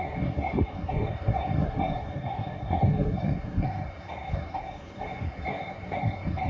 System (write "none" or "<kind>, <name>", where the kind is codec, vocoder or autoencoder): codec, SNAC